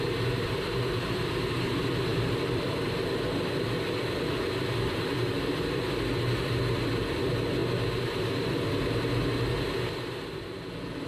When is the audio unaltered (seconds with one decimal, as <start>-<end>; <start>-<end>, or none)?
0.0-2.1; 6.2-11.1